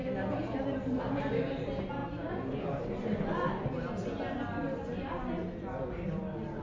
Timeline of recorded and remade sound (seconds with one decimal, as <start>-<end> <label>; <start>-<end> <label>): 0.0-1.2 remade; 1.2-6.6 recorded